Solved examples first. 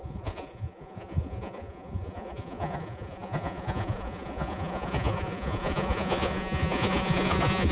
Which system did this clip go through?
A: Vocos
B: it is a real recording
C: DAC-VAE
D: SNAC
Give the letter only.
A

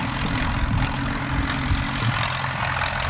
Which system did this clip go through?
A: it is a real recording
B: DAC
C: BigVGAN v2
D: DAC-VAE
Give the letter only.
A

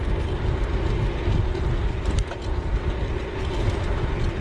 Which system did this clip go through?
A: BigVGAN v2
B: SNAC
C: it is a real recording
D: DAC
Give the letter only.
C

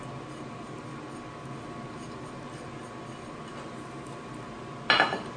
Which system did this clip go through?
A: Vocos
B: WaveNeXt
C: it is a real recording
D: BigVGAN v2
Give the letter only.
C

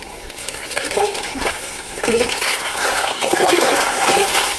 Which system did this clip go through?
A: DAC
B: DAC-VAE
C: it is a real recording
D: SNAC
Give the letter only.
D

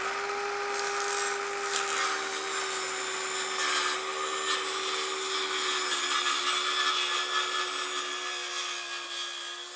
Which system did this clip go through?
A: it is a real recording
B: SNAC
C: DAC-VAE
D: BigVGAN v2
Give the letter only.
A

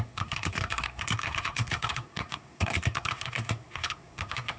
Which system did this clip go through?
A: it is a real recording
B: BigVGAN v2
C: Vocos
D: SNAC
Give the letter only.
D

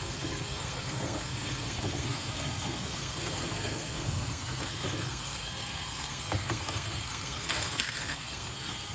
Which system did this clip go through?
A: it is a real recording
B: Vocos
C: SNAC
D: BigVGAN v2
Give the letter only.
C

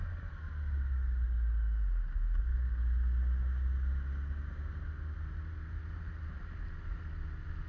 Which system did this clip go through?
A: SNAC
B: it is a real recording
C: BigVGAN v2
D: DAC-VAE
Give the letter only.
B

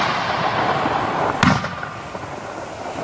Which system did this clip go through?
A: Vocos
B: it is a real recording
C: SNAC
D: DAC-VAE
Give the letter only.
B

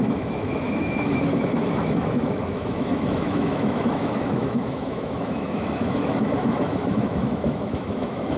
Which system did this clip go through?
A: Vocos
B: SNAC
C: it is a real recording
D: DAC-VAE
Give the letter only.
D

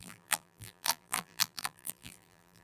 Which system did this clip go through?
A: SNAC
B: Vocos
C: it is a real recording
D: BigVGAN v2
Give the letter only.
D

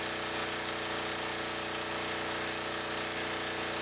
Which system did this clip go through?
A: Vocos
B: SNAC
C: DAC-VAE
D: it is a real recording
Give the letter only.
D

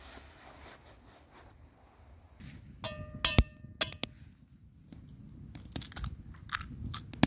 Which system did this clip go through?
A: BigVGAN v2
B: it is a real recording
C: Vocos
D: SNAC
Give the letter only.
B